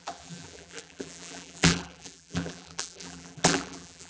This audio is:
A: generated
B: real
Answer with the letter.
A